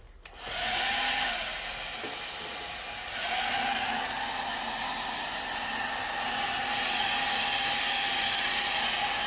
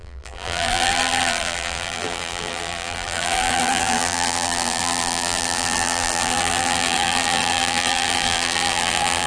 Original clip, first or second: first